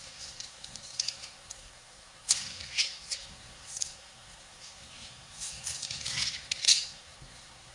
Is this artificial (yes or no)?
yes